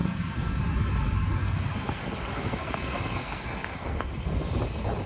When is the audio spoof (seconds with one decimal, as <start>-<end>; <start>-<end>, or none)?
0.0-0.6; 1.4-4.5